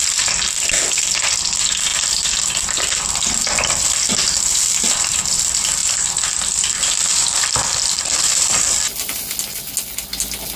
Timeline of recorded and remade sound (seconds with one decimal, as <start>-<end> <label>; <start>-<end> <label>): 0.0-7.1 recorded; 7.1-9.6 remade; 9.6-10.6 recorded